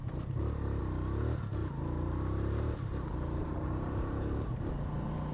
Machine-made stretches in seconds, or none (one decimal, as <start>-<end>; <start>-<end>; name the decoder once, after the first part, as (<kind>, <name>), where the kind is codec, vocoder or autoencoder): 0.0-0.8 (vocoder, BigVGAN v2); 1.6-4.7